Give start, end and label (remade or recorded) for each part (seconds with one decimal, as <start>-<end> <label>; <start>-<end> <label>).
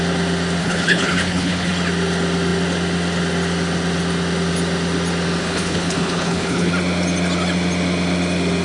0.0-0.6 recorded; 0.6-1.7 remade; 1.7-5.4 recorded; 5.4-6.7 remade; 6.7-8.6 recorded